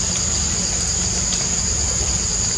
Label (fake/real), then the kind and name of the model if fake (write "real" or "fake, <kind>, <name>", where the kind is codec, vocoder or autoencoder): real